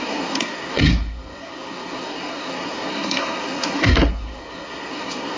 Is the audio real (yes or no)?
no